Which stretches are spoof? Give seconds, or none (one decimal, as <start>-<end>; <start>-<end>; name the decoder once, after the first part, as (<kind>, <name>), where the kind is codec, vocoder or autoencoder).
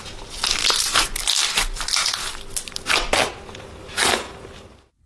none